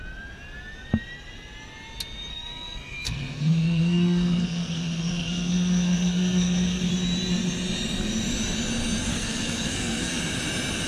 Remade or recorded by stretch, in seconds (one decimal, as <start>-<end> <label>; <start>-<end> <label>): 0.0-2.3 recorded; 2.3-6.9 remade; 6.9-9.1 recorded; 9.1-10.2 remade; 10.2-10.9 recorded